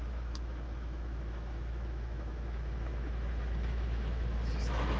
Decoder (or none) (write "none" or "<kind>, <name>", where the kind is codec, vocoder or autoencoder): autoencoder, DAC-VAE